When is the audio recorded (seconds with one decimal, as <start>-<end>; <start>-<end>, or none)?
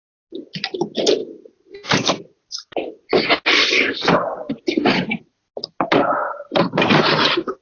0.0-1.2; 2.9-6.2; 7.0-7.6